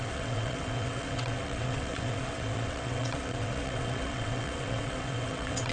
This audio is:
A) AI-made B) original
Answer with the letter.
A